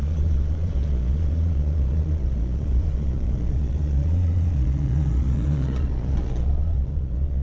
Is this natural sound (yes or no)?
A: no